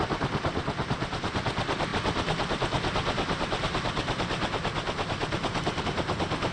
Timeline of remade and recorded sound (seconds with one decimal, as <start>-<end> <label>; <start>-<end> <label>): 0.0-6.5 recorded